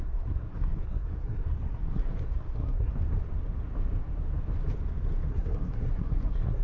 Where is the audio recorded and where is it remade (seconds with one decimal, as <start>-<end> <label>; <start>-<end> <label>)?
0.0-2.9 remade; 2.9-5.3 recorded; 5.3-6.6 remade